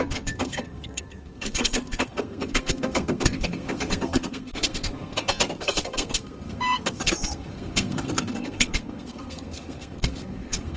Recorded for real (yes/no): no